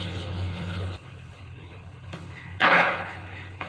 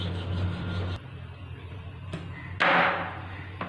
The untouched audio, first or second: second